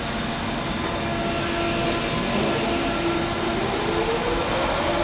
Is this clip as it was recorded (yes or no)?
yes